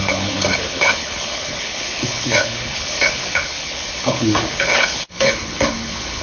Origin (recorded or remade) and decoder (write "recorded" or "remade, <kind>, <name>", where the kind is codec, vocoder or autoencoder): remade, codec, HILCodec